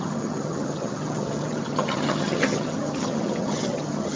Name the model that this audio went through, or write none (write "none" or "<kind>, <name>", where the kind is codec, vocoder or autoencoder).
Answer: vocoder, HiFi-GAN